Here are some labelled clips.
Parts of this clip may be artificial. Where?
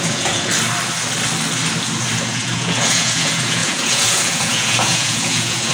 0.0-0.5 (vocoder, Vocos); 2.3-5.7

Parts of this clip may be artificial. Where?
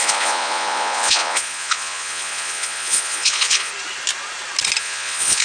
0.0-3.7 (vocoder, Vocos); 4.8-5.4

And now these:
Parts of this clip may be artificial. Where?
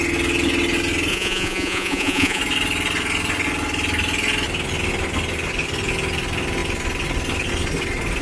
1.1-2.4 (vocoder, Vocos)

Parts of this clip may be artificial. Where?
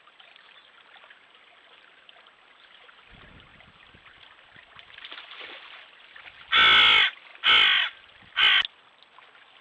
none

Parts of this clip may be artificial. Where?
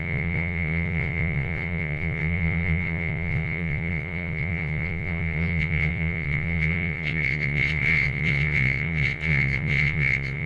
0.0-10.5 (vocoder, Vocos)